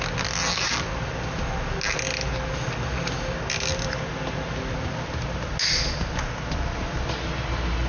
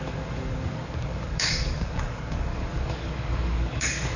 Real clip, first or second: first